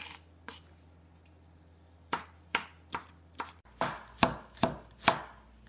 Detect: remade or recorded recorded